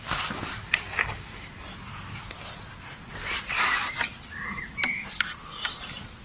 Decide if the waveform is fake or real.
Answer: real